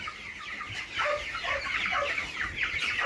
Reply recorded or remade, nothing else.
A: recorded